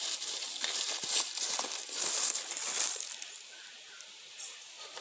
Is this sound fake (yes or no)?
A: no